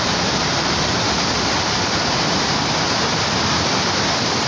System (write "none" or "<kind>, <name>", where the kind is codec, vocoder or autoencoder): none